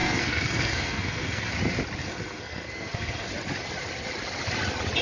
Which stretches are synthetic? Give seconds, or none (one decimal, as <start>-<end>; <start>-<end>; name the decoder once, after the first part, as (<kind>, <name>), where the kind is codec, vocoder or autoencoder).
0.0-1.5 (codec, SNAC); 2.0-3.3